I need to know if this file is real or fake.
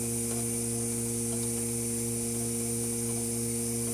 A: real